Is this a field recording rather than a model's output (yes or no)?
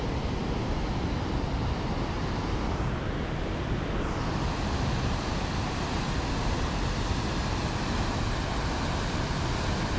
yes